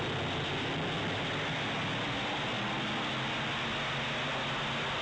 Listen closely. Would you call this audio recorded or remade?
recorded